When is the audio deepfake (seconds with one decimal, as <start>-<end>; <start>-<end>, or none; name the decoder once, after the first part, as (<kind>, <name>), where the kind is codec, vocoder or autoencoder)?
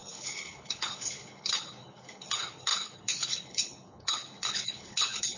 0.0-5.4 (codec, HILCodec)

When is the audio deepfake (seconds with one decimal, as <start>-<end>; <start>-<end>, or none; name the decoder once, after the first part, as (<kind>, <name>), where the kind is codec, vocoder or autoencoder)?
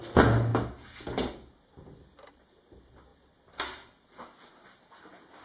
none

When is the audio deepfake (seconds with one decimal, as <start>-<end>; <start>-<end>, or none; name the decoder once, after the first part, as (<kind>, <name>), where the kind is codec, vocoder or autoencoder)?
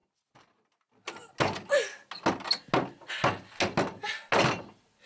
none